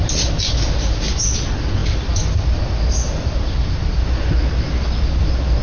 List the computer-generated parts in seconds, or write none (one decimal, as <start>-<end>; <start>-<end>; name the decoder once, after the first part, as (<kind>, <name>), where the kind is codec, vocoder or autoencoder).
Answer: none